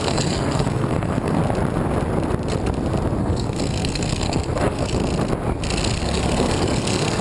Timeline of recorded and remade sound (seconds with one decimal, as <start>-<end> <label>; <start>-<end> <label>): 0.0-1.4 remade; 1.4-3.2 recorded; 3.2-5.0 remade; 5.0-6.0 recorded; 6.0-7.2 remade